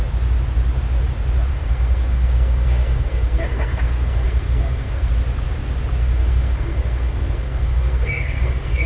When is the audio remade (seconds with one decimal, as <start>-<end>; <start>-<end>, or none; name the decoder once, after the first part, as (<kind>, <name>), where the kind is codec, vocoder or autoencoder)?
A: 1.5-5.1 (codec, SNAC); 6.0-8.9

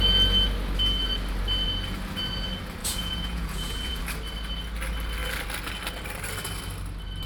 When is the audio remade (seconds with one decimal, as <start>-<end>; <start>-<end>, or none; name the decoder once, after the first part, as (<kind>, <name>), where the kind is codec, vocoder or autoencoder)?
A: 2.8-4.0 (vocoder, Vocos)

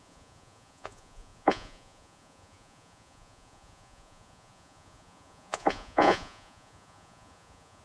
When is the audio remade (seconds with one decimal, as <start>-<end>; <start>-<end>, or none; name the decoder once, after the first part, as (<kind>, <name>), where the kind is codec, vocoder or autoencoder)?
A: 0.0-7.8 (vocoder, Vocos)

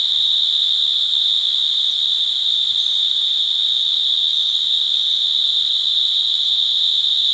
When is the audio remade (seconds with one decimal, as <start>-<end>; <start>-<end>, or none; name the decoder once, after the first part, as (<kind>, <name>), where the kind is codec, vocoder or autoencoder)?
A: 1.6-3.7 (vocoder, BigVGAN v2)

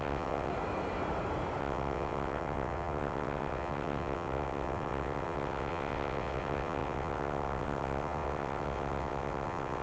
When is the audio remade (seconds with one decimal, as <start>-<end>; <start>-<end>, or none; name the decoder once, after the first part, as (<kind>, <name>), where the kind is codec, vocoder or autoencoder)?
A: 0.0-0.5 (vocoder, WaveNeXt); 1.6-9.8

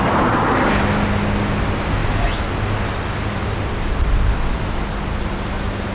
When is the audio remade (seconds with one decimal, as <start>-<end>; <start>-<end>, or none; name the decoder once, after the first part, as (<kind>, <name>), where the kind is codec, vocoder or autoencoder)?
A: none

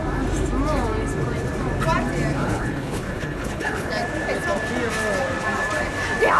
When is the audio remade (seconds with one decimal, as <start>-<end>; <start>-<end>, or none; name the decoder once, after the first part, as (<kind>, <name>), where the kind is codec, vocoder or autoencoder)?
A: 2.3-3.9 (codec, HILCodec)

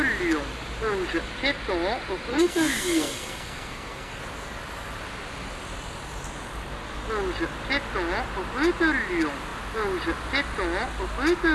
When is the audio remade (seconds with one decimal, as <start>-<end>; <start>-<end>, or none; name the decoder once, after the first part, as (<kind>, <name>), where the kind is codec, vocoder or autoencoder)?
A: 2.3-4.2 (codec, SNAC)